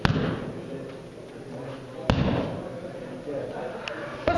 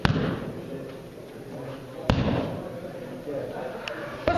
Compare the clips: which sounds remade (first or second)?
second